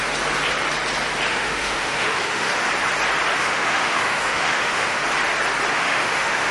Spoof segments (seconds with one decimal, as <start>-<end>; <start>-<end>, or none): 1.3-2.5; 3.4-5.0; 5.7-6.5